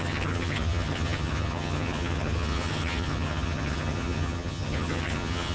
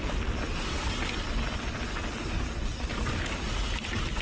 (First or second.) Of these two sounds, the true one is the second